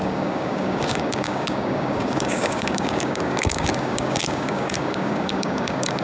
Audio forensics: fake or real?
fake